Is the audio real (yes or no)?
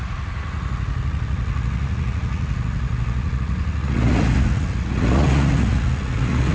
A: no